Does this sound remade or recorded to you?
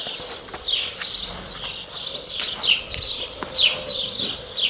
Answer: recorded